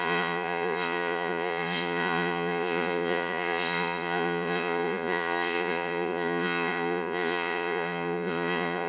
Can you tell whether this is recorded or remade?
remade